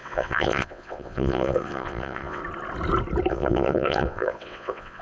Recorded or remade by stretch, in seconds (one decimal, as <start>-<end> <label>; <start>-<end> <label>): 0.0-2.4 remade; 2.4-3.3 recorded; 3.3-5.0 remade